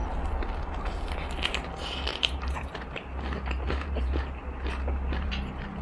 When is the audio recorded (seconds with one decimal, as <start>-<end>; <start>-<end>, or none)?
0.0-2.1; 5.3-5.8